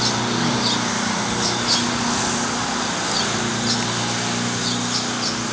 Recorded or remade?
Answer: recorded